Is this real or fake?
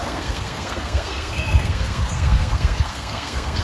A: fake